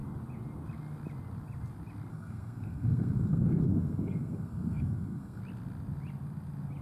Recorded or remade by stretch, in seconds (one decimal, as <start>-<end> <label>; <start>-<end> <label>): 0.0-2.1 recorded; 2.1-5.4 remade; 5.4-6.8 recorded